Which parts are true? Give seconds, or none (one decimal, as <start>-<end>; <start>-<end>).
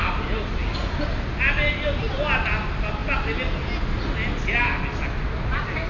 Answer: 0.0-5.9